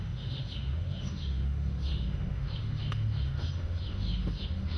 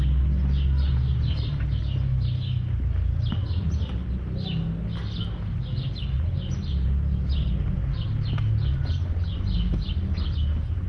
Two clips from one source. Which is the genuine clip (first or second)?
second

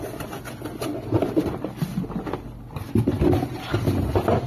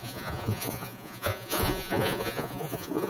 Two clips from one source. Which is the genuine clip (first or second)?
first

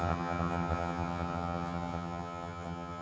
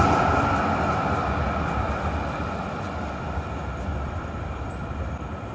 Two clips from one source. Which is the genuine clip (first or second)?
second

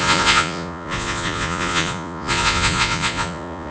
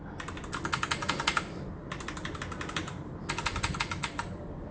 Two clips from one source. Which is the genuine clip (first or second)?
second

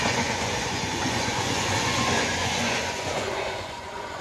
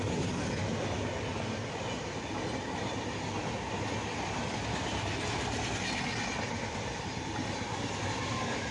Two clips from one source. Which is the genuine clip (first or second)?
second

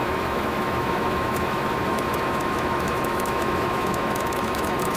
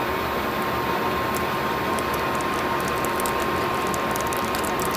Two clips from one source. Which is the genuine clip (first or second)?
second